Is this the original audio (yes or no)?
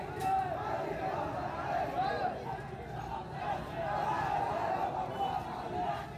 yes